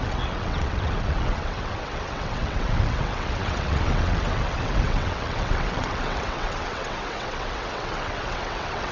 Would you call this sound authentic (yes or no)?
no